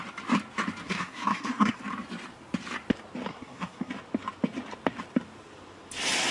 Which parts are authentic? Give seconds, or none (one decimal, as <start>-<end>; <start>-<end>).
0.0-0.8; 1.8-3.3; 3.9-6.3